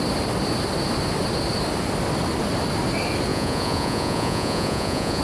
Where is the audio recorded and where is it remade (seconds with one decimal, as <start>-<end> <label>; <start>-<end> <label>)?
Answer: 0.0-3.3 recorded; 3.3-5.2 remade